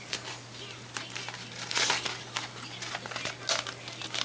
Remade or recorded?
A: recorded